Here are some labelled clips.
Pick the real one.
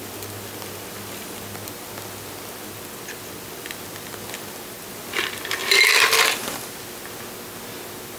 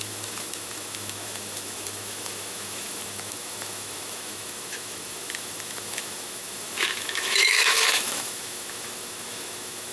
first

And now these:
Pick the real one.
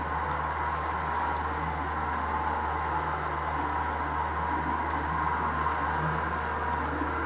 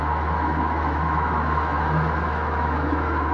first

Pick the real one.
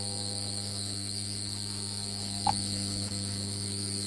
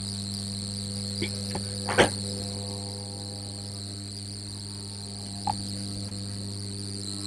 second